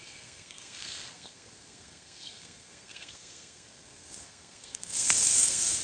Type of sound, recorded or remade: remade